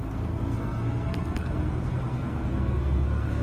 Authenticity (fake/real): fake